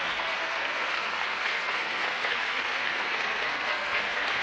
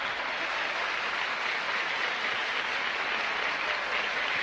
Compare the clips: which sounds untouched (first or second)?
second